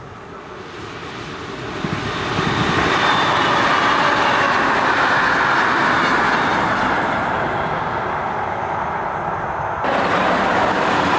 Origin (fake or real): real